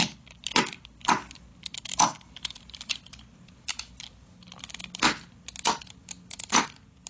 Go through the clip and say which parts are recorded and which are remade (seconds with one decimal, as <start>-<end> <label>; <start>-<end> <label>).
0.0-7.1 recorded